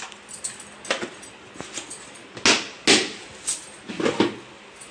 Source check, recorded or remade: recorded